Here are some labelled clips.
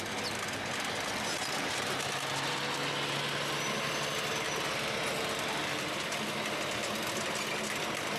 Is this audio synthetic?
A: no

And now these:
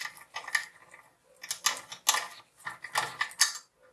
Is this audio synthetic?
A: no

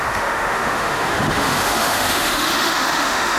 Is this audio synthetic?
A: yes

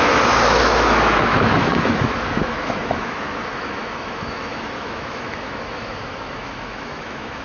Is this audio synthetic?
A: yes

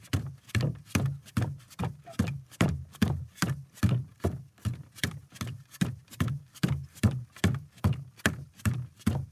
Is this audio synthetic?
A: no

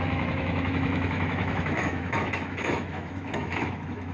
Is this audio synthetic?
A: yes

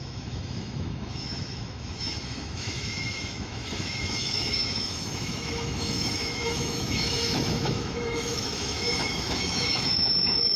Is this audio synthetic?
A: yes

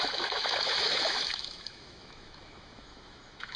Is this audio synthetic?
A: yes